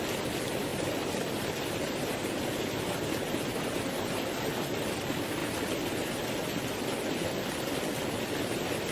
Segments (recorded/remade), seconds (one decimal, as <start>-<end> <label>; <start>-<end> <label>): 0.0-8.9 recorded